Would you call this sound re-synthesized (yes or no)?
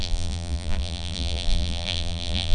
yes